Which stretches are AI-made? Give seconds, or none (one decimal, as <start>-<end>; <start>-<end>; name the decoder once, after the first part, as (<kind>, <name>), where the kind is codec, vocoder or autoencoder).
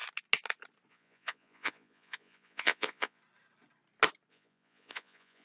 0.9-3.2 (vocoder, Vocos); 4.3-5.4